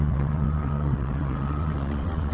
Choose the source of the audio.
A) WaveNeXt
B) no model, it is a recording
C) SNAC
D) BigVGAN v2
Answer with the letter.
A